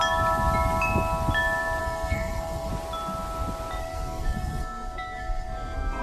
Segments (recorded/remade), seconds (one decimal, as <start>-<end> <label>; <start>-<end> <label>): 0.0-1.8 recorded; 1.8-2.7 remade; 2.7-3.8 recorded; 3.8-6.0 remade